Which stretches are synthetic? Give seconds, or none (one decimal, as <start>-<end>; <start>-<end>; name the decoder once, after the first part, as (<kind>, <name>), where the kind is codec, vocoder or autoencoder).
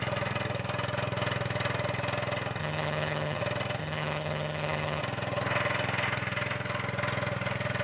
2.6-3.4 (vocoder, HiFi-GAN); 3.8-5.0